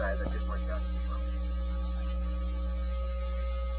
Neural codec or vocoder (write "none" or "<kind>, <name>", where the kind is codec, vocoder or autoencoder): none